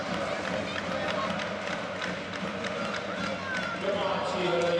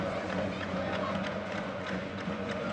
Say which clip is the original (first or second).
first